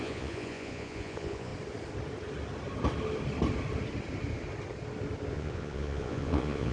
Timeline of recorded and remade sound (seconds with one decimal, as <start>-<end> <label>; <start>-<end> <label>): 0.0-1.5 remade; 1.5-5.3 recorded; 5.3-6.7 remade